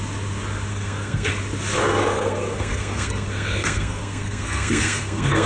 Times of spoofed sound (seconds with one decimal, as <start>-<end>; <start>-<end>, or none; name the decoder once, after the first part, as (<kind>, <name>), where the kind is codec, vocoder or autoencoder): 0.7-1.3 (codec, SNAC); 2.0-5.5